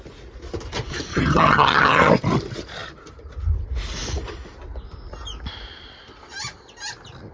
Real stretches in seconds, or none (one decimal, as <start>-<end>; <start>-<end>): 0.0-1.1; 2.1-7.3